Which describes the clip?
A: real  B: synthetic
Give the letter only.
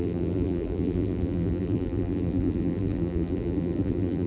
B